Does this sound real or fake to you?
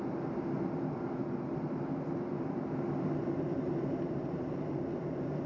real